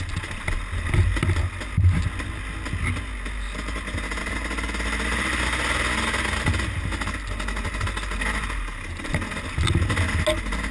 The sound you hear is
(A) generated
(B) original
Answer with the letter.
B